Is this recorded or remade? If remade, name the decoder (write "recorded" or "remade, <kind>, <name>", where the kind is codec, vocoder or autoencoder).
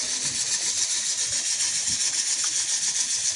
recorded